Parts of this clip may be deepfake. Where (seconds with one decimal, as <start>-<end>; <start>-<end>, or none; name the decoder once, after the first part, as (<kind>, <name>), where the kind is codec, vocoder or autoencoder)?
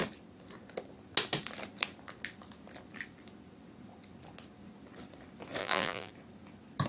5.6-6.1 (vocoder, BigVGAN v2)